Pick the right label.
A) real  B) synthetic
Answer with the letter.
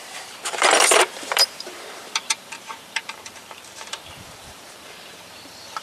B